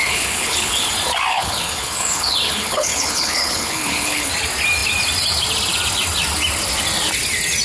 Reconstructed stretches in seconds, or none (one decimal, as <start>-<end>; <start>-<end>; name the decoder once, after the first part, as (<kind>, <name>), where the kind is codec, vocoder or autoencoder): 0.0-0.9 (codec, HILCodec); 1.3-4.3